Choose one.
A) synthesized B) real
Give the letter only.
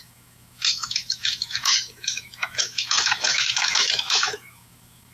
A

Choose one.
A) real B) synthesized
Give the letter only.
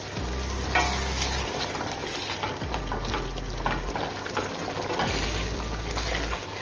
A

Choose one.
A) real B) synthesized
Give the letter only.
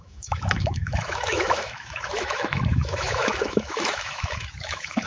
B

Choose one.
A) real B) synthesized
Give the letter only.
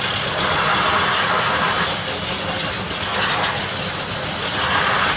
A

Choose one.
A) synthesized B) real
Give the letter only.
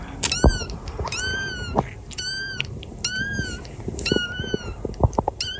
B